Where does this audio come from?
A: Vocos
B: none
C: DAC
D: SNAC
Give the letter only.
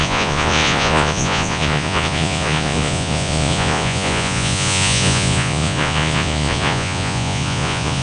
A